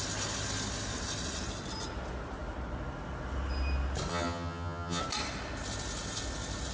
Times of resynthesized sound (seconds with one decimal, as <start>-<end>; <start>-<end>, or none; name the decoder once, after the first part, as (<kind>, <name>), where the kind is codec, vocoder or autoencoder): 4.1-5.0 (vocoder, HiFi-GAN)